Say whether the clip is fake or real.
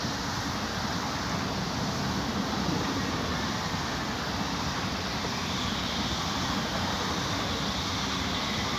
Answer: real